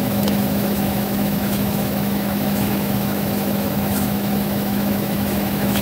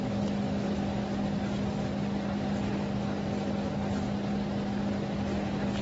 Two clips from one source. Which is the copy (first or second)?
first